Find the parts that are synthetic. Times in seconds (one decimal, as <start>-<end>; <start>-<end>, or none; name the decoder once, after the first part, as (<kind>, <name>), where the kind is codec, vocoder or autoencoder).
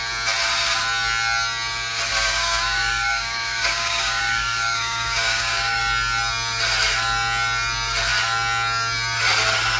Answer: 2.1-5.8 (codec, DAC)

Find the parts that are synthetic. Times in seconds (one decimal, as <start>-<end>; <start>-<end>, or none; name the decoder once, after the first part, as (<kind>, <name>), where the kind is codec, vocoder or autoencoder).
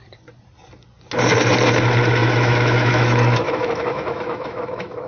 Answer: 2.2-5.1 (autoencoder, DAC-VAE)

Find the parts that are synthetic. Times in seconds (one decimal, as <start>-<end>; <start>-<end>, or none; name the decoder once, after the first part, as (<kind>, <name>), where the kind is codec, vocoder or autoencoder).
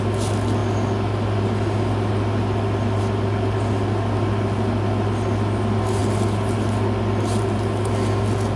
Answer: none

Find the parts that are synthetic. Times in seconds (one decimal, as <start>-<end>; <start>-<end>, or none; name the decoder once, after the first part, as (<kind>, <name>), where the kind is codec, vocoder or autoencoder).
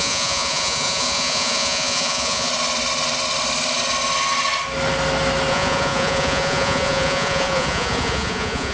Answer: 0.0-2.5 (vocoder, Vocos); 5.5-8.7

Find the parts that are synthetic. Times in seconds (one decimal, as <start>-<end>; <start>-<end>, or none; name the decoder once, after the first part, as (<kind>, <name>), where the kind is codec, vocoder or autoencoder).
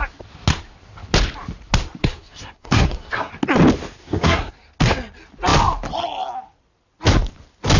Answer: 2.0-3.3 (codec, SNAC); 4.0-4.5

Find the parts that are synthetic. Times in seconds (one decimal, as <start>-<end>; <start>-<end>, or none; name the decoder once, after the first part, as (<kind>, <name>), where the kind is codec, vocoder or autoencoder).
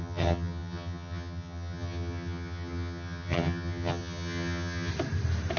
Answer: 0.0-4.9 (vocoder, HiFi-GAN)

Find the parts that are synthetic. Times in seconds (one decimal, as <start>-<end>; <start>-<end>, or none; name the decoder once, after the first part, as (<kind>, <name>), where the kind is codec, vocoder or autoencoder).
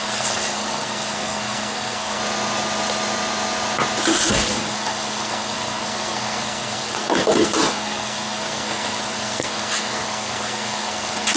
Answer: 0.0-2.2 (codec, SNAC); 4.3-11.4